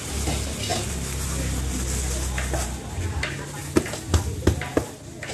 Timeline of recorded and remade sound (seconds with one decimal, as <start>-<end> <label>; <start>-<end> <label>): 0.0-5.3 recorded